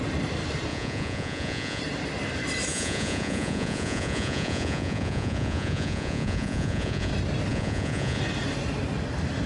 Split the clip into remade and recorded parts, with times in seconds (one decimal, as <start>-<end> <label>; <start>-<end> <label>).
0.0-0.7 recorded; 0.7-1.8 remade; 1.8-2.7 recorded; 2.7-7.1 remade; 7.1-7.5 recorded; 7.5-8.2 remade; 8.2-9.5 recorded